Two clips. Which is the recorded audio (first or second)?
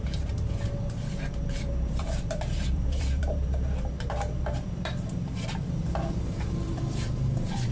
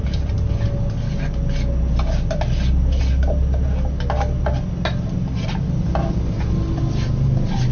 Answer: second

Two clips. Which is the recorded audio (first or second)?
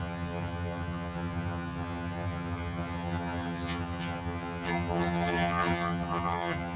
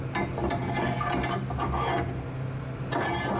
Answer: second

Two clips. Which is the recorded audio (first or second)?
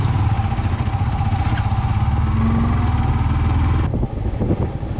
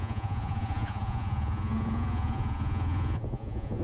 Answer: first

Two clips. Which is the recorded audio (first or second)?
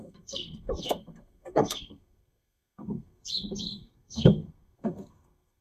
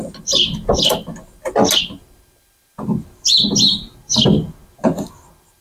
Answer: second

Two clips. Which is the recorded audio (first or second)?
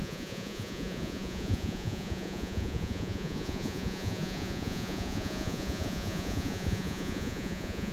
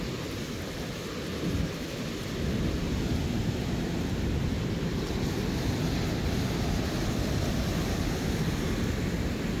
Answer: second